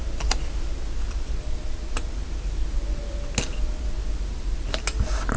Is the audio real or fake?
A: real